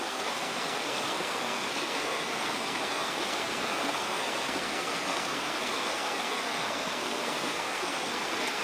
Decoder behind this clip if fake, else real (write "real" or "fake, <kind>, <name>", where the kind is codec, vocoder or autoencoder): fake, codec, SNAC